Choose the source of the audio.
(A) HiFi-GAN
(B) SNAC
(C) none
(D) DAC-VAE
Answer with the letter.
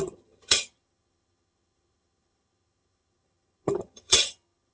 A